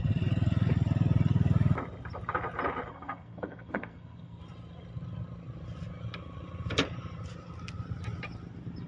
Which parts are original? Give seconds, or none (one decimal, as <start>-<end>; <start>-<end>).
0.0-2.9; 4.4-8.9